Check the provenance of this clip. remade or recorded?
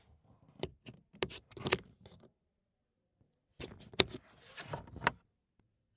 recorded